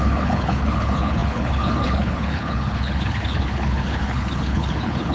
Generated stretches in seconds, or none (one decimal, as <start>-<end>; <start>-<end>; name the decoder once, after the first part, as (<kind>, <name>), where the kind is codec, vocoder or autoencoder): 0.0-5.1 (codec, HILCodec)